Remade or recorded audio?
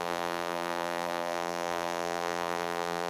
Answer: remade